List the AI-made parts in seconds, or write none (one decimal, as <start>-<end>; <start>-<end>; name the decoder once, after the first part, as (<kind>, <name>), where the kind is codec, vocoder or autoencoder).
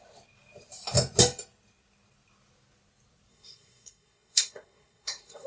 3.3-5.5 (codec, SNAC)